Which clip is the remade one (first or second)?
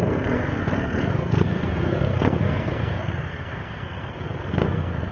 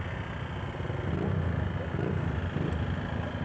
first